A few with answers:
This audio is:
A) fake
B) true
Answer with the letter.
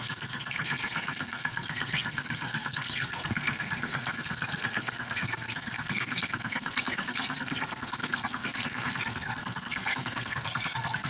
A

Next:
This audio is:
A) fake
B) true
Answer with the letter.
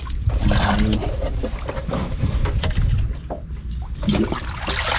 B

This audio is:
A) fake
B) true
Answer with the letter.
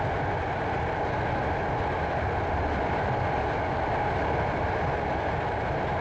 B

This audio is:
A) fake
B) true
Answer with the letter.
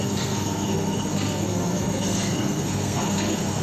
A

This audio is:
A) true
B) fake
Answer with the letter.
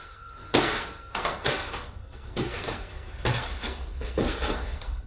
B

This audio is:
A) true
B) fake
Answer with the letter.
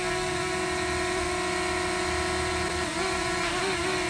A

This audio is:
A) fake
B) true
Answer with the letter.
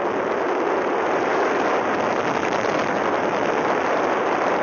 B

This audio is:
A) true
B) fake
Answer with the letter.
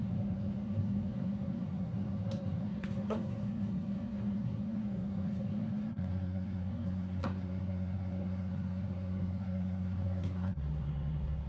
B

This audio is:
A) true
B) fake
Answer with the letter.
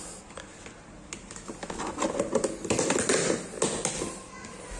A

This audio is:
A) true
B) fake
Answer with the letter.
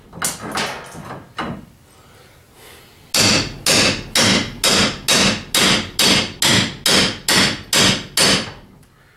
A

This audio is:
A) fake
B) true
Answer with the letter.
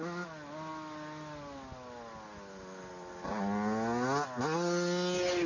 B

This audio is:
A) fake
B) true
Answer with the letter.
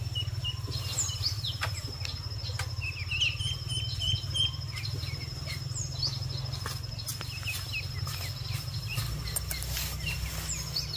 B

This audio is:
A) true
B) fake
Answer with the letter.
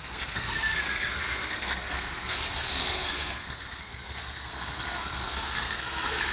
B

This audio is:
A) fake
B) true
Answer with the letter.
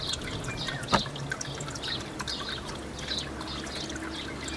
B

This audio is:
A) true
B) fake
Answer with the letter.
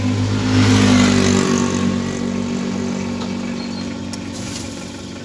A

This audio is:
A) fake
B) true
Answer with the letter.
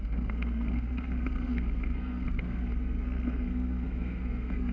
A